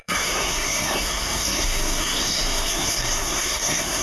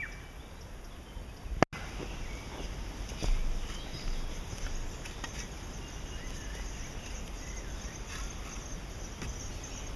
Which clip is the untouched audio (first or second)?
second